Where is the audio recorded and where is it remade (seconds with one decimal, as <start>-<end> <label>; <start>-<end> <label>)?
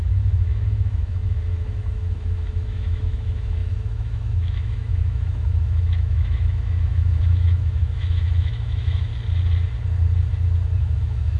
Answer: 0.0-9.1 remade; 9.1-10.8 recorded; 10.8-11.4 remade